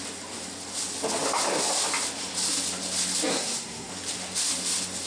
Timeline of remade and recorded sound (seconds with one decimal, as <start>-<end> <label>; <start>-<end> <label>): 0.0-3.3 recorded; 3.3-3.9 remade; 3.9-5.1 recorded